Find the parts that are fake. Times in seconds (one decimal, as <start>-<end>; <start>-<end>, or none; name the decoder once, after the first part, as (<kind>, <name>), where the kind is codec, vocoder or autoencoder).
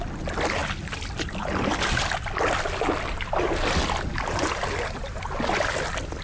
none